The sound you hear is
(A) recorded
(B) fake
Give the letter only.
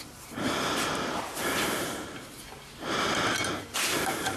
A